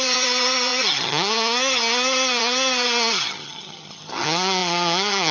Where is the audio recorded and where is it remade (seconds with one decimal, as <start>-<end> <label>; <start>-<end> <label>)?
0.0-5.3 remade